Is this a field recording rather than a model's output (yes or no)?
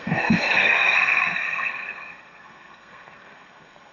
no